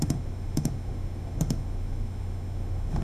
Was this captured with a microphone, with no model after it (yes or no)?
no